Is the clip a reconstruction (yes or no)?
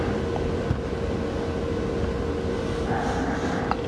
no